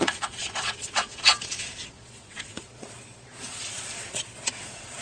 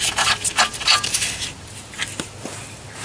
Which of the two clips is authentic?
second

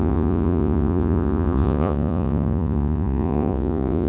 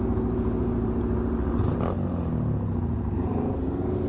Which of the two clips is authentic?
second